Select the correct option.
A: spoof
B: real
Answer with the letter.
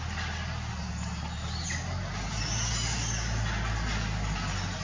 B